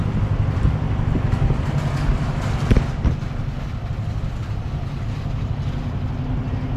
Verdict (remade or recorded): recorded